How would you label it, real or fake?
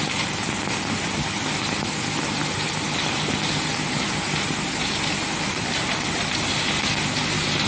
real